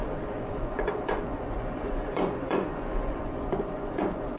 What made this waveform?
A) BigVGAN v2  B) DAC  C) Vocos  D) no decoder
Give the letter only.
C